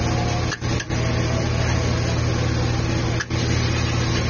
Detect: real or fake real